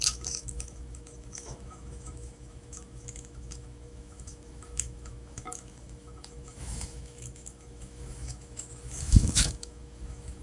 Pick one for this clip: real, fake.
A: fake